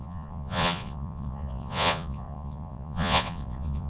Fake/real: fake